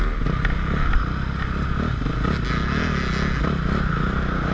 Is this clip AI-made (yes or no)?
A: no